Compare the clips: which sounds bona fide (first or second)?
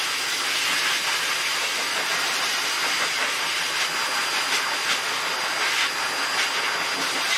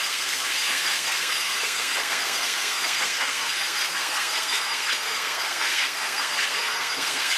first